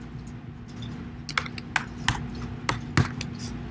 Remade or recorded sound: recorded